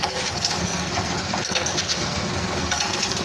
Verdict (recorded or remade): remade